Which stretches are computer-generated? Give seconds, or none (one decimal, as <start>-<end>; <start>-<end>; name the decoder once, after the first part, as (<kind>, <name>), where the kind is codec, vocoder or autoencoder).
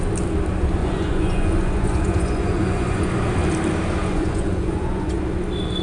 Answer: 0.8-3.1 (vocoder, Vocos); 4.0-5.2